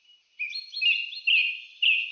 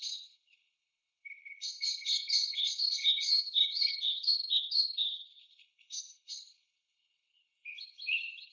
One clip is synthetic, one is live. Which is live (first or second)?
first